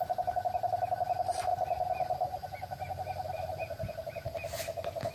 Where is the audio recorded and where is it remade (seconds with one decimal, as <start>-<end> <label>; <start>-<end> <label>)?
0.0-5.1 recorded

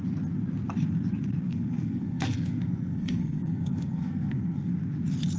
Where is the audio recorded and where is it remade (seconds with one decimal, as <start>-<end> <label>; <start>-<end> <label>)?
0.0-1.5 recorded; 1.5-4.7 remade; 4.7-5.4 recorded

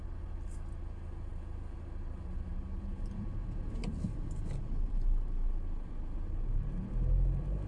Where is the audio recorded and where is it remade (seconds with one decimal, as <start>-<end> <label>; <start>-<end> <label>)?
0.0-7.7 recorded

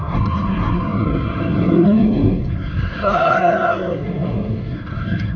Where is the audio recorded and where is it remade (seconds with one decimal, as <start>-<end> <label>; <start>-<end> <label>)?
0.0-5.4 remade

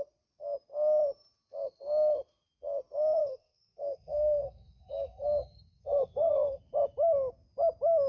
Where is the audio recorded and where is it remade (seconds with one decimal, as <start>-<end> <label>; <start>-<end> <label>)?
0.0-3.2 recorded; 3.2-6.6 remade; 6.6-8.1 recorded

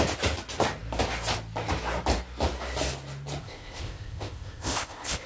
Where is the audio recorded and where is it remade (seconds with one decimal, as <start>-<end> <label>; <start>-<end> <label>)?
0.0-3.4 recorded; 3.4-5.3 remade

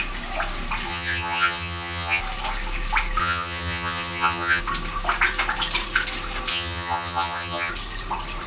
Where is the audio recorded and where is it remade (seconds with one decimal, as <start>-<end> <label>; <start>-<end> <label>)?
0.0-0.9 recorded; 0.9-2.2 remade; 2.2-3.2 recorded; 3.2-4.6 remade; 4.6-6.5 recorded; 6.5-7.7 remade; 7.7-8.5 recorded